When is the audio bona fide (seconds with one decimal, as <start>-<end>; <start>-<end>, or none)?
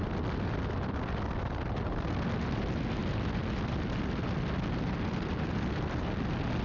0.0-6.6